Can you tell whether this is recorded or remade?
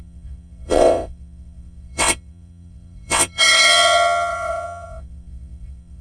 remade